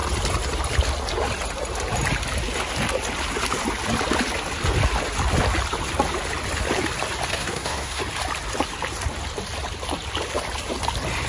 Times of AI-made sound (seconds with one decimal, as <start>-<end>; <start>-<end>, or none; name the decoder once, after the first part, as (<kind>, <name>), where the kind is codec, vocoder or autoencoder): 7.3-8.0 (codec, SNAC)